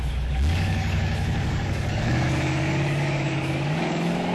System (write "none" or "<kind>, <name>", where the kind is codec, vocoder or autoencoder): codec, DAC